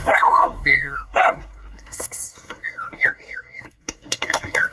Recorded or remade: remade